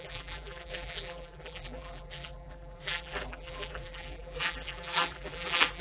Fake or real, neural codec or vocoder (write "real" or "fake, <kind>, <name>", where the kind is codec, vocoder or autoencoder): fake, vocoder, BigVGAN v2